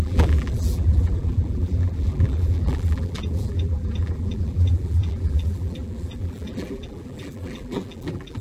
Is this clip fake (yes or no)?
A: yes